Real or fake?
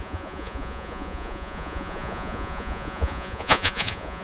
fake